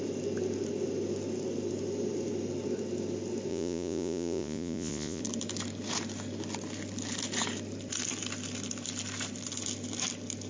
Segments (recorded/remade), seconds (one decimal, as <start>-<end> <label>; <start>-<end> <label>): 0.0-3.5 recorded; 3.5-5.2 remade; 5.2-10.5 recorded